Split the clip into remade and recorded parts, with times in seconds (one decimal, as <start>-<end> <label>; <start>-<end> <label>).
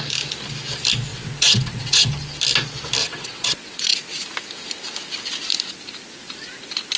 0.0-1.1 recorded; 1.1-2.1 remade; 2.1-3.0 recorded; 3.0-4.2 remade; 4.2-7.0 recorded